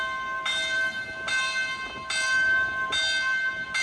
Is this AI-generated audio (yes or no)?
no